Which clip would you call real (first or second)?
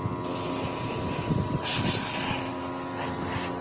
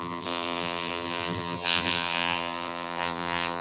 first